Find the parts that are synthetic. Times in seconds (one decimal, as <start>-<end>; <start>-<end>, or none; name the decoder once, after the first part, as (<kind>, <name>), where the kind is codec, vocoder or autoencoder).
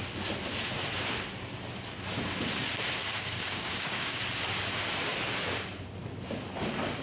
3.0-4.2 (codec, DAC)